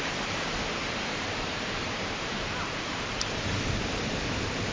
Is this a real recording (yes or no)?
no